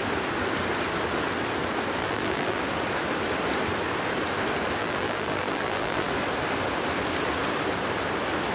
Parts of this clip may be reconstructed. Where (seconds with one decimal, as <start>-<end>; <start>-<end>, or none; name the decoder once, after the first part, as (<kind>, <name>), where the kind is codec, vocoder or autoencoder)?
2.0-2.6 (vocoder, BigVGAN v2); 4.8-6.1